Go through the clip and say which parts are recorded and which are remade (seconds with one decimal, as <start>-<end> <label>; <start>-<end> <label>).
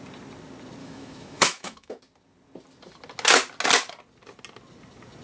0.0-0.8 recorded; 0.8-2.0 remade; 2.0-5.2 recorded